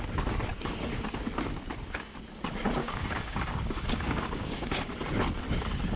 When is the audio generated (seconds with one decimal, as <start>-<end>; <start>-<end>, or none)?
2.8-4.9